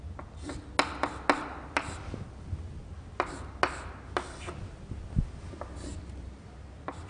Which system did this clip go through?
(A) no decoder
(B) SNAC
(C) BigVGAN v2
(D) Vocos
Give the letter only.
A